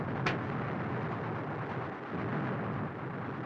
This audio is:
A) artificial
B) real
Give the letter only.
B